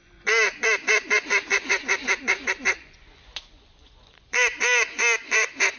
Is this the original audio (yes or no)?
no